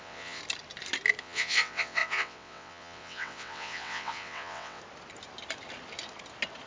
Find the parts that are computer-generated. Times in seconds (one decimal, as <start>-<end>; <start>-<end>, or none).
0.0-0.4; 1.2-4.8